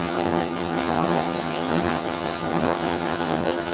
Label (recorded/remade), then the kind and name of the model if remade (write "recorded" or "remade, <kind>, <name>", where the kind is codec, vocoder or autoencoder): remade, vocoder, HiFi-GAN